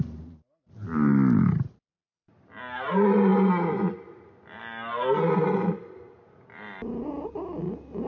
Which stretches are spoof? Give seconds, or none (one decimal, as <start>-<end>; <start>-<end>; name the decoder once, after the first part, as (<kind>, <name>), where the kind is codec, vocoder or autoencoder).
none